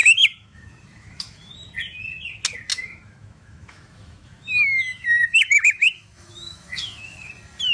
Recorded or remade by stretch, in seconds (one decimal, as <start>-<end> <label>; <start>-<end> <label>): 0.0-1.5 remade; 1.5-2.7 recorded; 2.7-7.3 remade; 7.3-7.7 recorded

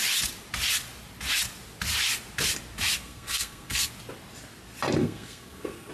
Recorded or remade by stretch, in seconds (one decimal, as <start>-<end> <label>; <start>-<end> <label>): 0.0-3.0 recorded; 3.0-3.9 remade; 3.9-5.0 recorded; 5.0-5.9 remade

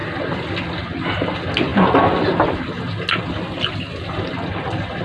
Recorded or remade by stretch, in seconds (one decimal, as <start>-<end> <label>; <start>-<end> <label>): 0.0-5.0 recorded

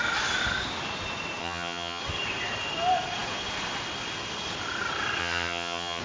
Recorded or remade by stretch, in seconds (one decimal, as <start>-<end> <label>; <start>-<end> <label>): 0.0-1.4 recorded; 1.4-2.0 remade; 2.0-5.2 recorded; 5.2-6.0 remade

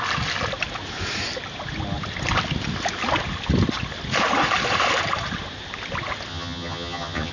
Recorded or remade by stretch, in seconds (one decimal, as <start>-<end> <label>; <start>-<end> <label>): 0.0-6.3 recorded; 6.3-7.3 remade